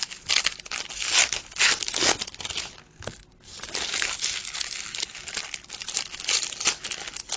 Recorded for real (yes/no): yes